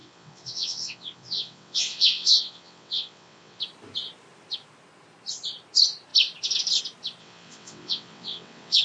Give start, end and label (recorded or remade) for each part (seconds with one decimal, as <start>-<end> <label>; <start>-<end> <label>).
0.0-3.6 remade; 3.6-7.2 recorded; 7.2-8.8 remade